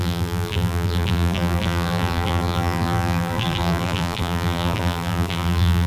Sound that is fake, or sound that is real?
fake